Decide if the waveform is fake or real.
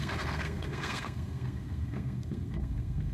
fake